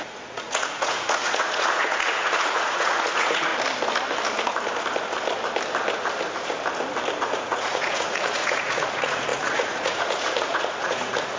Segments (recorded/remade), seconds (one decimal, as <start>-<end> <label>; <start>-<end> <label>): 0.0-3.5 remade; 3.5-7.2 recorded; 7.2-11.4 remade